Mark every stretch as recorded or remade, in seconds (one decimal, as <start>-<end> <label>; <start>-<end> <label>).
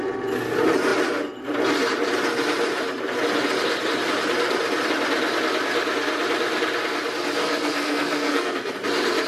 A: 0.0-7.4 recorded; 7.4-8.7 remade; 8.7-9.3 recorded